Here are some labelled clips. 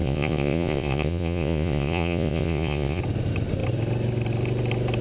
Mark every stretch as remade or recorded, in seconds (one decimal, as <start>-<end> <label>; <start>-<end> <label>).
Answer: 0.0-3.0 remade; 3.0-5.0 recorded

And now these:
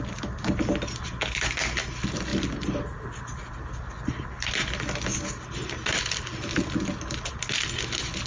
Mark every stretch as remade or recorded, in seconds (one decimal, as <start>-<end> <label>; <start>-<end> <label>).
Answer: 0.0-8.3 recorded

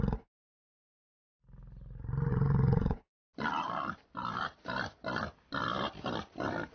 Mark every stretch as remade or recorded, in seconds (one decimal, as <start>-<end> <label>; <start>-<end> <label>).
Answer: 0.0-2.3 recorded; 2.3-3.2 remade; 3.2-6.7 recorded

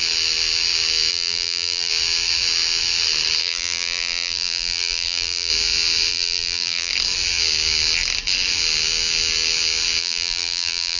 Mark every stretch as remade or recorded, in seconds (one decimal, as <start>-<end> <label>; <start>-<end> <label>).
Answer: 0.0-1.1 recorded; 1.1-1.9 remade; 1.9-3.4 recorded; 3.4-5.5 remade; 5.5-6.1 recorded; 6.1-6.9 remade; 6.9-10.0 recorded; 10.0-11.0 remade

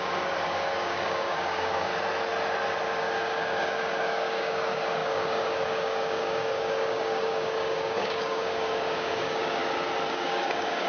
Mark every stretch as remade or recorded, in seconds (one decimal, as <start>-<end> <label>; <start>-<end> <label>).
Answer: 0.0-1.9 remade; 1.9-2.8 recorded; 2.8-9.6 remade; 9.6-10.1 recorded; 10.1-10.9 remade

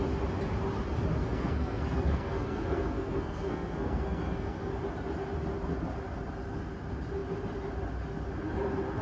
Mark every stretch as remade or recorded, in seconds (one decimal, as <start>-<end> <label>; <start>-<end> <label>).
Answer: 0.0-1.2 recorded; 1.2-4.7 remade; 4.7-9.0 recorded

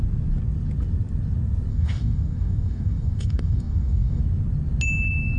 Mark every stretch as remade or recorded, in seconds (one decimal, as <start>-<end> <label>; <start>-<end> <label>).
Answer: 0.0-1.7 recorded; 1.7-4.2 remade; 4.2-5.4 recorded